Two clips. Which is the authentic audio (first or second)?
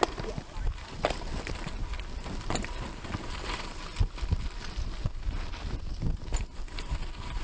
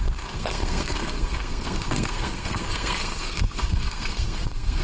first